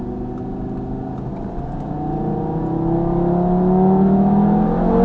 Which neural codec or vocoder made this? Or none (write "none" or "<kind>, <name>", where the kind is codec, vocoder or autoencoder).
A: none